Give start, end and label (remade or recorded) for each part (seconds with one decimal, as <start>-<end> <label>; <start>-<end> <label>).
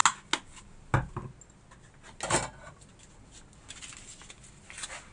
0.0-5.1 recorded